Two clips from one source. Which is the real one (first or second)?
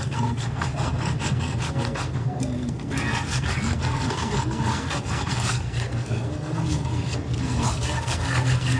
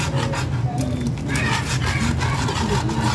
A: second